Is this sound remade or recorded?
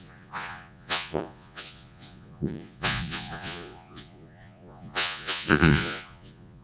remade